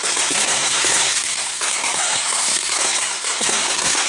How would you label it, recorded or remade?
remade